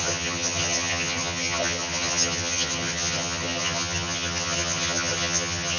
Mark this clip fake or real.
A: fake